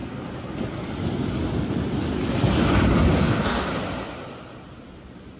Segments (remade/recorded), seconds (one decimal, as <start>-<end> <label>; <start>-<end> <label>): 0.0-3.2 recorded; 3.2-3.7 remade; 3.7-5.4 recorded